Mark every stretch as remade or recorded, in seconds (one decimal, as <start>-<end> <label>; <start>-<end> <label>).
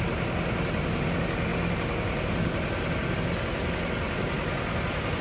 0.0-5.2 recorded